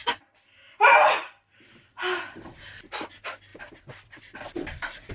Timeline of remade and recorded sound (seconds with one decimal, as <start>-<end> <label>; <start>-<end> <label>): 0.0-3.1 remade; 3.1-3.5 recorded; 3.5-5.1 remade